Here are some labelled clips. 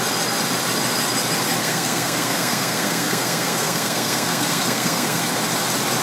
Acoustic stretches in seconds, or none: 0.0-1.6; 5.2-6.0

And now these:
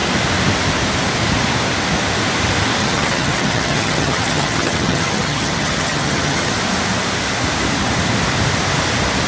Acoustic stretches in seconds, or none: 0.0-2.8; 6.5-9.3